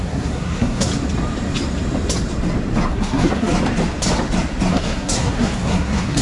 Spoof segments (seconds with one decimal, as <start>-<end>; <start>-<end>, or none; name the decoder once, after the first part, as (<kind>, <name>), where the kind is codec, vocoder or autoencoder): 0.0-0.9 (codec, SNAC); 2.9-3.5; 4.7-6.2